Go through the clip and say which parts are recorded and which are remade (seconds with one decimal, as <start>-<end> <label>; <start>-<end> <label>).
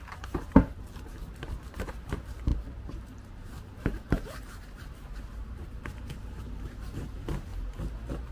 0.0-7.5 remade; 7.5-8.3 recorded